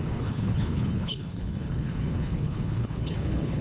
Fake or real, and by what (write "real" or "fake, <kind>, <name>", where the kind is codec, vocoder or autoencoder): fake, codec, HILCodec